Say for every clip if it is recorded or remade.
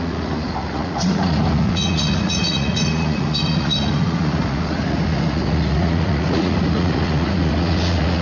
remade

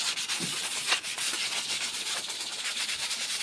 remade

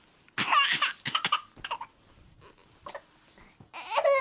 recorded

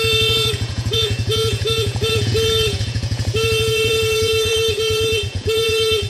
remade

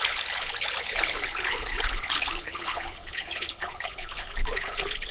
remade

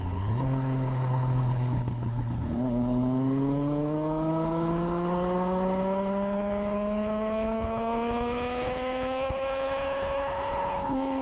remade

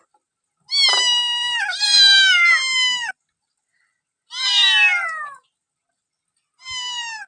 recorded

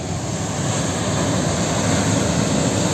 recorded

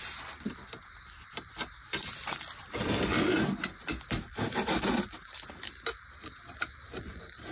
recorded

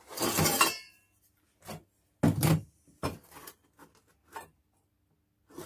recorded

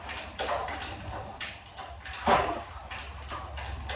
recorded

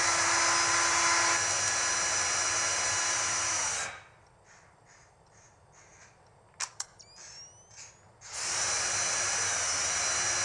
recorded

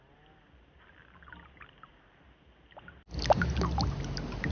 recorded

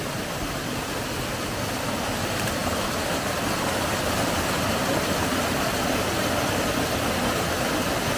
recorded